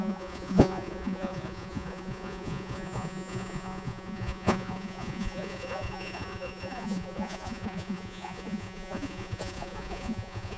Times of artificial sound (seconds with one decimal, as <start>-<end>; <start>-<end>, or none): 0.0-10.6

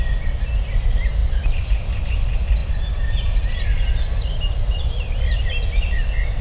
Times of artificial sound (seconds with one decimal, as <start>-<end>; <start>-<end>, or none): none

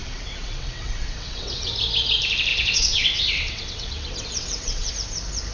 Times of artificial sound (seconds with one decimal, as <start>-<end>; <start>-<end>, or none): 0.0-1.7; 2.5-4.9

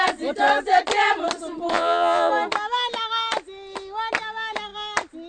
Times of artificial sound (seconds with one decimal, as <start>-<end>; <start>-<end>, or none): 1.7-2.3

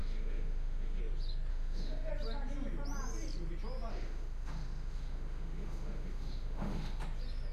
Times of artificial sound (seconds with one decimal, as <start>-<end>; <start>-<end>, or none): 0.0-1.0; 1.5-2.1; 3.9-7.0

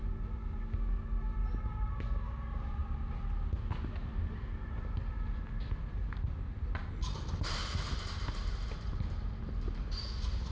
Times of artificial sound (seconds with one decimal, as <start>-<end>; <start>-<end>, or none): none